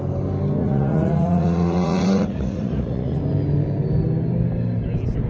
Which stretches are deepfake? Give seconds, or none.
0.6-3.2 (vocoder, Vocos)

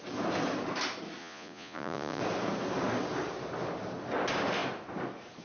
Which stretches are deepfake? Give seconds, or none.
1.2-2.2 (vocoder, Vocos)

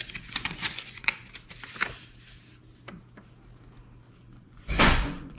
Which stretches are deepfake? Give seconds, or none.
0.0-1.2 (vocoder, Vocos); 4.2-5.4